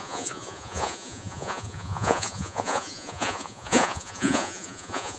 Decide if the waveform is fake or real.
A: fake